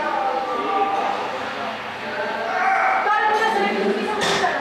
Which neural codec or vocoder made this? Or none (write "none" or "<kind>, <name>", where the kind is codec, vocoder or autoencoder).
none